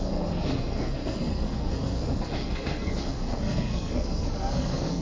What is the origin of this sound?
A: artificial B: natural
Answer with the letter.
A